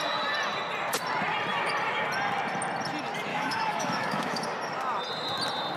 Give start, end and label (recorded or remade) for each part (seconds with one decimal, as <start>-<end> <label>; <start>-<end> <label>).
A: 0.0-3.3 recorded; 3.3-4.4 remade; 4.4-5.8 recorded